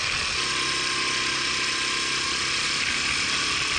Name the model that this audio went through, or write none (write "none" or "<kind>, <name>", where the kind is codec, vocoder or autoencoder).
none